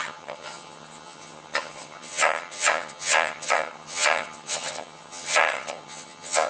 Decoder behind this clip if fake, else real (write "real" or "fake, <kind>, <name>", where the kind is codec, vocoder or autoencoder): fake, vocoder, HiFi-GAN